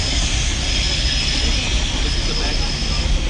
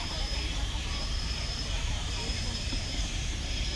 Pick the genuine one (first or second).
first